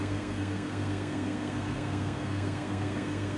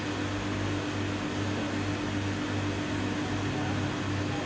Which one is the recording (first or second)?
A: second